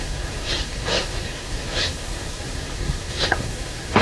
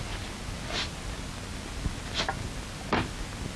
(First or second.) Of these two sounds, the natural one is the second